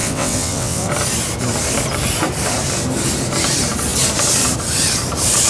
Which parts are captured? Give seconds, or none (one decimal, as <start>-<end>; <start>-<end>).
0.9-5.5